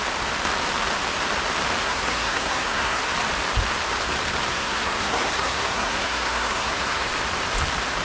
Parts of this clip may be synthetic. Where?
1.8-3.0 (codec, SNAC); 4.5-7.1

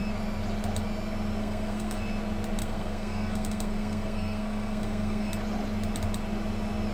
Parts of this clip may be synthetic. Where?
1.4-2.0 (codec, SNAC); 2.6-5.3

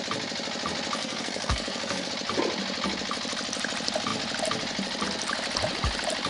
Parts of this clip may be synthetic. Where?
1.0-2.1 (codec, SNAC)

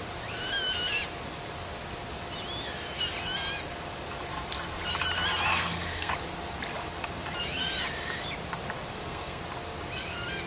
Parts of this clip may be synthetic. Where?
5.5-6.1 (codec, SNAC); 8.9-9.4

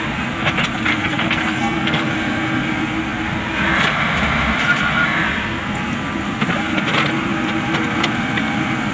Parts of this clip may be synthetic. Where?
0.9-2.1 (codec, SNAC)

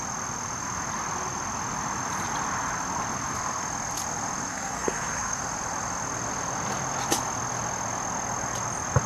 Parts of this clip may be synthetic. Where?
4.5-5.4 (codec, SNAC)

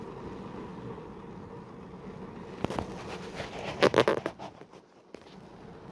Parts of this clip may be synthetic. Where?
none

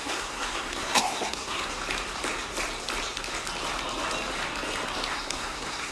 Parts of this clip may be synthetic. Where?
0.0-1.8 (codec, SNAC); 5.1-5.9